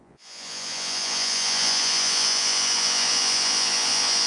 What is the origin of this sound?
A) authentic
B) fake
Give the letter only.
B